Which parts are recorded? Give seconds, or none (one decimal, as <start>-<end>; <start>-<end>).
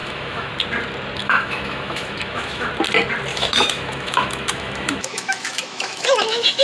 0.5-1.2; 2.7-3.3